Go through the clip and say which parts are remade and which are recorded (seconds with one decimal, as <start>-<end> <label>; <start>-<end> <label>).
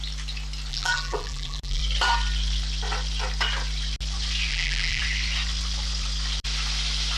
0.0-0.7 recorded; 0.7-1.8 remade; 1.8-4.5 recorded; 4.5-5.0 remade; 5.0-7.2 recorded